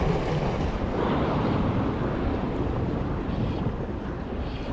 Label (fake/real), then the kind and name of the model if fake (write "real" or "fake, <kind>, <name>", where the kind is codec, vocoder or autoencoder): real